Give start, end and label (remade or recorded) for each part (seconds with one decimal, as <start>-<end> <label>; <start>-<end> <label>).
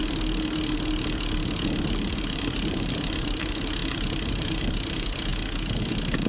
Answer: 0.0-2.1 recorded; 2.1-3.8 remade; 3.8-4.3 recorded; 4.3-5.3 remade; 5.3-5.8 recorded; 5.8-6.3 remade